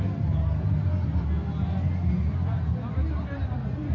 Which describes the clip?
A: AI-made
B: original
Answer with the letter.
B